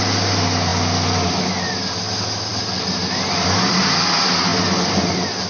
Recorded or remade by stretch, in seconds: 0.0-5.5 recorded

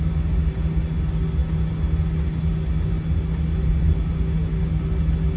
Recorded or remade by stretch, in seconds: 0.0-5.4 recorded

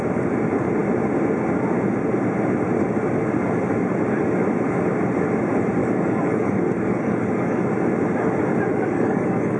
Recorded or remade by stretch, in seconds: 0.0-5.8 recorded; 5.8-7.6 remade; 7.6-8.7 recorded; 8.7-9.6 remade

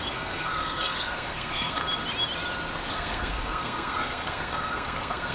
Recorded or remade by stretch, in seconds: 0.0-1.8 remade; 1.8-2.9 recorded; 2.9-5.3 remade